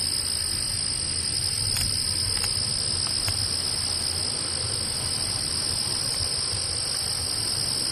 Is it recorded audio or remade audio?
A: recorded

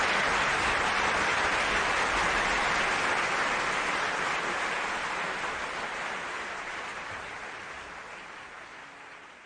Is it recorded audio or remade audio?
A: recorded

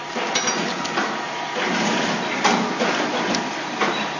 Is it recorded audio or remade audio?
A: recorded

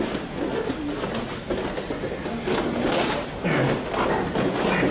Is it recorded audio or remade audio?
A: recorded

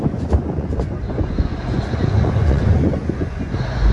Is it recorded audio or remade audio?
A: remade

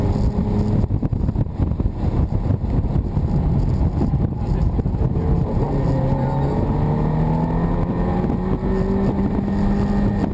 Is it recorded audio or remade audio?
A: recorded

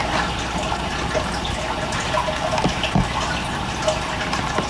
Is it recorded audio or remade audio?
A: recorded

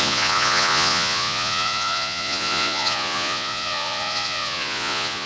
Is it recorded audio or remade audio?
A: remade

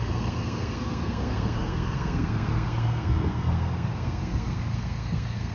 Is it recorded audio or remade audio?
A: remade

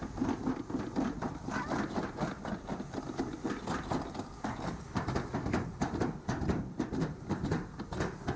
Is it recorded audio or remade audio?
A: recorded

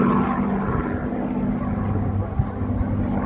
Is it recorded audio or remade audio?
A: recorded